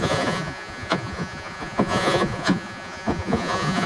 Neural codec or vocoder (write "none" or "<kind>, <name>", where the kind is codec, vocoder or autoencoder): vocoder, Vocos